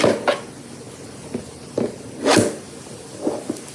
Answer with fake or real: real